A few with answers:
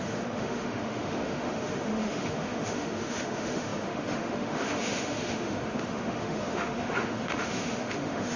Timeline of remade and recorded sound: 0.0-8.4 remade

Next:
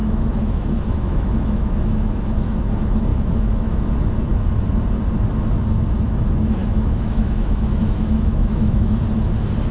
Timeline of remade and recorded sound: 0.0-2.7 remade; 2.7-3.1 recorded; 3.1-3.9 remade; 3.9-6.6 recorded; 6.6-9.0 remade; 9.0-9.7 recorded

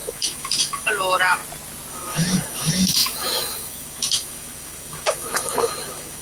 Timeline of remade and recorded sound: 0.0-1.4 remade; 1.4-1.9 recorded; 1.9-6.2 remade

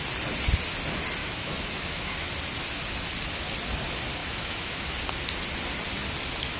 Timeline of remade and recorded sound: 0.0-1.2 recorded; 1.2-2.1 remade; 2.1-4.2 recorded; 4.2-4.8 remade; 4.8-6.6 recorded

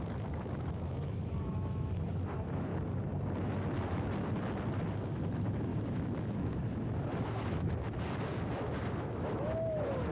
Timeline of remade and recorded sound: 0.0-2.7 remade; 2.7-4.9 recorded; 4.9-7.8 remade; 7.8-8.5 recorded; 8.5-10.1 remade